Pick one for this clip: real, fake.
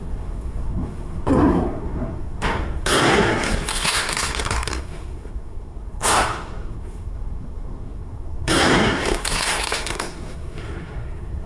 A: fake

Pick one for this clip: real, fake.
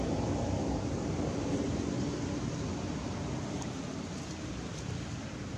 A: real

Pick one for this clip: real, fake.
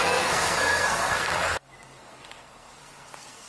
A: fake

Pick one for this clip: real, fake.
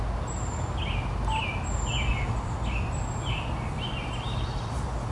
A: real